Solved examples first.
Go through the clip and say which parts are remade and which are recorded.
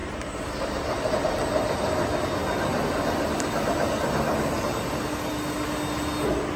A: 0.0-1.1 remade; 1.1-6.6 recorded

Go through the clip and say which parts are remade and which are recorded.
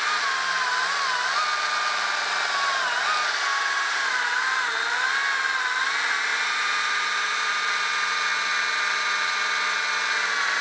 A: 0.0-3.5 recorded; 3.5-4.1 remade; 4.1-6.3 recorded; 6.3-7.5 remade; 7.5-10.6 recorded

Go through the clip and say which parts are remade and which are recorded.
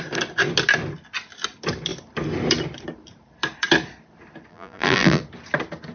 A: 0.0-4.5 recorded; 4.5-5.2 remade; 5.2-5.9 recorded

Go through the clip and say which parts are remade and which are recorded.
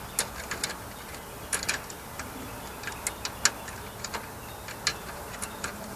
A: 0.0-4.9 recorded; 4.9-6.0 remade